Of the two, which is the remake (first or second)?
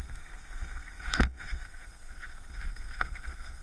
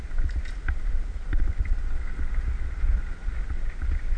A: first